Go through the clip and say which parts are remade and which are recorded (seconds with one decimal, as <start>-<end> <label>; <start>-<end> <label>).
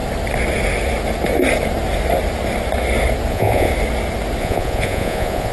0.0-3.3 recorded; 3.3-3.7 remade; 3.7-4.4 recorded; 4.4-5.5 remade